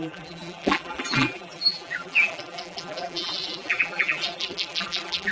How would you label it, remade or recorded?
remade